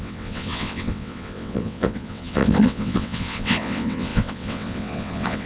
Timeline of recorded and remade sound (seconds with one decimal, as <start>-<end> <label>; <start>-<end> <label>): 0.0-5.5 remade